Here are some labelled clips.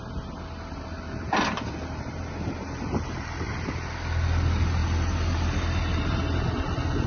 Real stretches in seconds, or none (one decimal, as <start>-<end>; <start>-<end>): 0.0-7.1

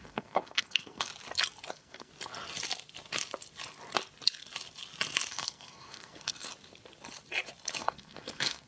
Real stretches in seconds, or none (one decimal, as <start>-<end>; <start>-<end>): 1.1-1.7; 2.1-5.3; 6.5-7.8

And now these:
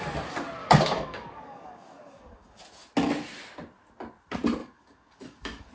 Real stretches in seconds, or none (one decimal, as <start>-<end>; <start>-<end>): 0.0-0.6; 2.6-4.6

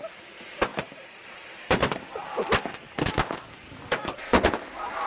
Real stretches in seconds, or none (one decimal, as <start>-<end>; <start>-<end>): 0.0-0.7; 2.0-5.1